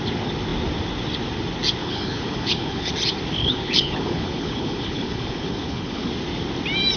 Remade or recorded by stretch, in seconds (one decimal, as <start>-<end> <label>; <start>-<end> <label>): 0.0-1.8 recorded; 1.8-2.9 remade; 2.9-3.4 recorded; 3.4-6.1 remade; 6.1-7.0 recorded